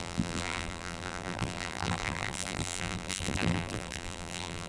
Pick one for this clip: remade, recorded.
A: remade